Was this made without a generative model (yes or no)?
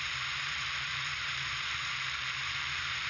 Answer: no